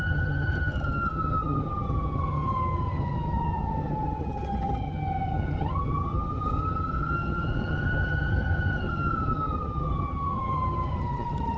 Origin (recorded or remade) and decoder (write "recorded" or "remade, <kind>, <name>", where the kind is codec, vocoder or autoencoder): remade, vocoder, HiFi-GAN